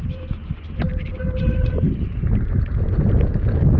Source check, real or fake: real